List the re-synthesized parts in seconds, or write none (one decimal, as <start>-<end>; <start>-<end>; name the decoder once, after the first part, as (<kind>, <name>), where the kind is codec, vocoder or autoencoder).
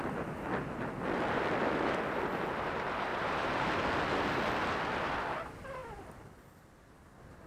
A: 3.1-3.7 (vocoder, BigVGAN v2)